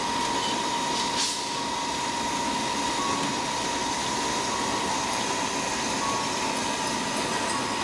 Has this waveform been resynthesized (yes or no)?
no